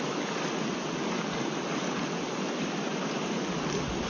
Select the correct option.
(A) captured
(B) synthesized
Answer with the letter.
A